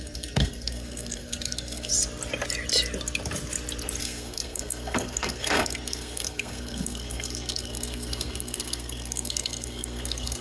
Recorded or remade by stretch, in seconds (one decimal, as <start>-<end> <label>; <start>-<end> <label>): 0.0-1.9 remade; 1.9-4.0 recorded; 4.0-10.4 remade

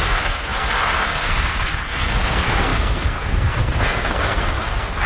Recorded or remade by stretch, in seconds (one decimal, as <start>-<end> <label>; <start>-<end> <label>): 0.0-5.1 remade

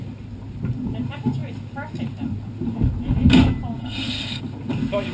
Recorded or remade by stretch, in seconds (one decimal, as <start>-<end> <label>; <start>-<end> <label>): 0.0-3.8 recorded; 3.8-4.4 remade; 4.4-5.1 recorded

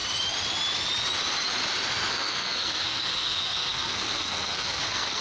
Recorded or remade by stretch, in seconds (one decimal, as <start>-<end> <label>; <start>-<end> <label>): 0.0-2.1 recorded; 2.1-5.2 remade

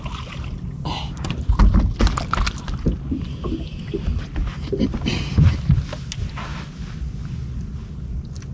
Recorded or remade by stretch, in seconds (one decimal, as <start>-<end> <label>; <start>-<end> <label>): 0.0-8.5 recorded

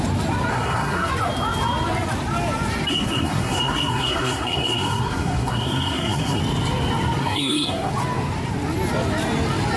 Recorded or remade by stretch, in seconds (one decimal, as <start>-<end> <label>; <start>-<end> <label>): 0.0-0.5 recorded; 0.5-1.1 remade; 1.1-2.9 recorded; 2.9-6.4 remade; 6.4-7.2 recorded; 7.2-7.9 remade; 7.9-9.8 recorded

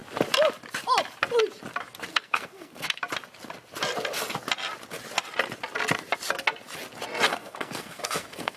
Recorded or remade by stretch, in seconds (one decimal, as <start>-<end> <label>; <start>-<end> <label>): 0.0-2.1 recorded; 2.1-3.0 remade; 3.0-7.3 recorded; 7.3-8.6 remade